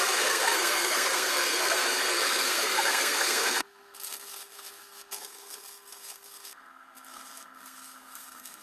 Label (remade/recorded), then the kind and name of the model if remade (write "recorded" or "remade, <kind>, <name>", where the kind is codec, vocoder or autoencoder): remade, codec, SNAC